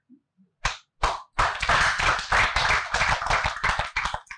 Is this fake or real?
real